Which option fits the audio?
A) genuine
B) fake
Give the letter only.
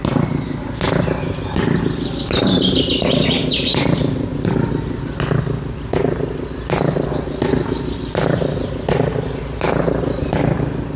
A